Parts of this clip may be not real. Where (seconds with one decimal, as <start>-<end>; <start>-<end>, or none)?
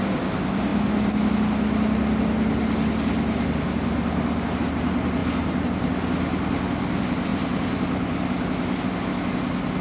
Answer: none